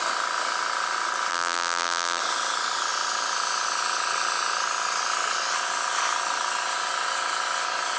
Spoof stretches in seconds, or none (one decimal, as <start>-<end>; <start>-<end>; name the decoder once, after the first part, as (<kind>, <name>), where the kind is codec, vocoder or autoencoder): 1.3-2.2 (vocoder, BigVGAN v2)